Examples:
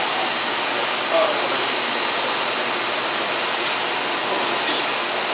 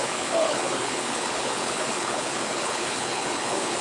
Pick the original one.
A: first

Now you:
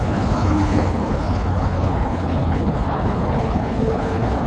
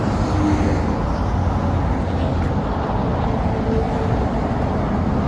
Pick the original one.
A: second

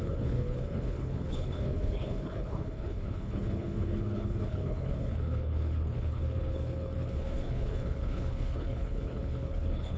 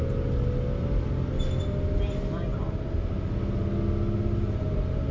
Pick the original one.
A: second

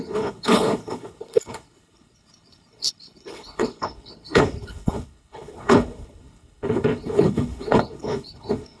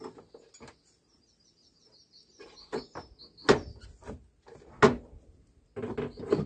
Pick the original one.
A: second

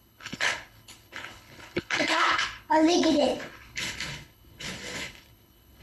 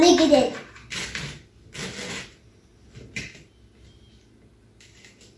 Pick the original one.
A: second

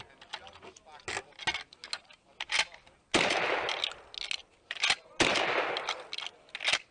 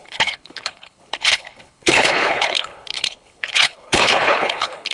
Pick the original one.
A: first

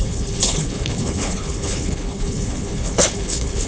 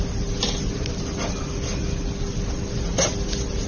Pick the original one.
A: second